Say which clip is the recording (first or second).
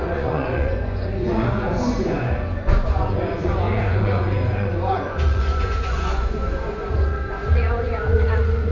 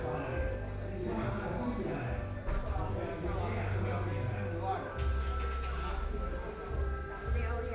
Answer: second